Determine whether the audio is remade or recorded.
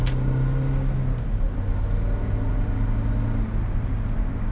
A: recorded